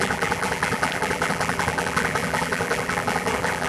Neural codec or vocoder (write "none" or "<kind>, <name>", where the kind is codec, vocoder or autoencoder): vocoder, BigVGAN v2